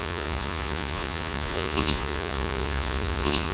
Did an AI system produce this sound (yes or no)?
yes